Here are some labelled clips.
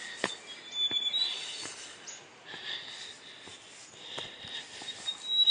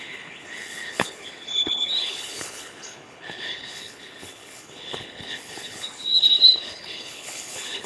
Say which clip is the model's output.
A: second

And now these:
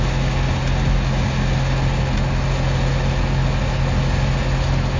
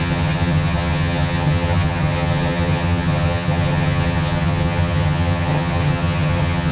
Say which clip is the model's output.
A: second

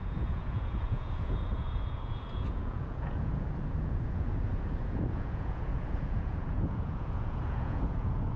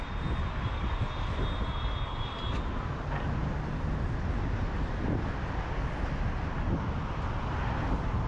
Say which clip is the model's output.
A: first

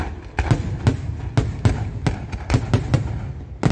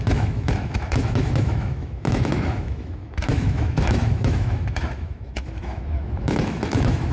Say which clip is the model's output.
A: second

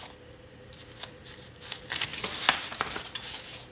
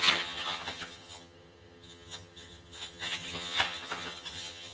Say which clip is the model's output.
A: second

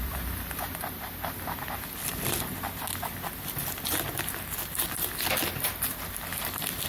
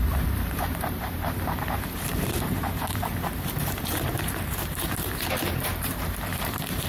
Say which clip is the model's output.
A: second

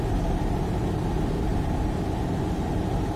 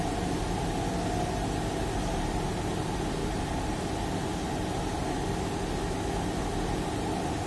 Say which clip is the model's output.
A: first